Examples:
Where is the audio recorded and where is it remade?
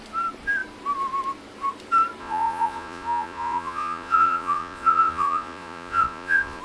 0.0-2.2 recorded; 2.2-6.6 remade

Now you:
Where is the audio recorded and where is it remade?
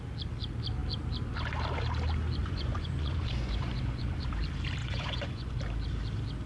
0.0-2.4 recorded; 2.4-4.3 remade; 4.3-4.8 recorded; 4.8-5.6 remade; 5.6-6.5 recorded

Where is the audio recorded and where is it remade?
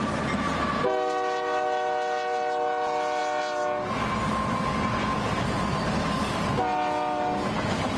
0.0-8.0 recorded